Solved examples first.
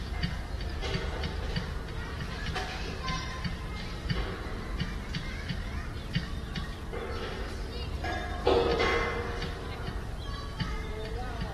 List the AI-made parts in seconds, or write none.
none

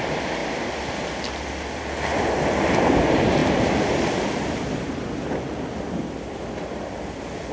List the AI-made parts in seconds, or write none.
none

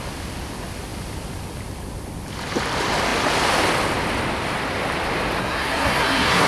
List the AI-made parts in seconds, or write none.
5.4-6.5 (codec, SNAC)